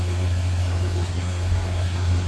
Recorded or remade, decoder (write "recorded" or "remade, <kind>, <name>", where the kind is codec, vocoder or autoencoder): remade, codec, SNAC